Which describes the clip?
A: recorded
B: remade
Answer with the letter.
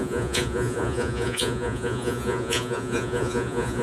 B